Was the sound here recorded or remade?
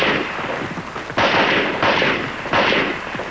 recorded